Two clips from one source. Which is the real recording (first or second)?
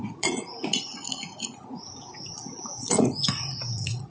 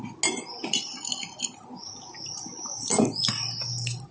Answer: second